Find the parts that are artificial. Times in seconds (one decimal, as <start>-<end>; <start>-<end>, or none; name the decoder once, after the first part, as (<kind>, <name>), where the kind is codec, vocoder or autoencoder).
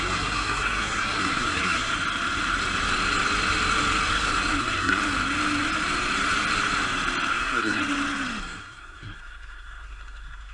0.0-1.9 (codec, SNAC); 4.6-5.0; 7.3-7.8; 8.4-10.5